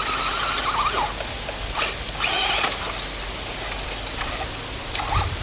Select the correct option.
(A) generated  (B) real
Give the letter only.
B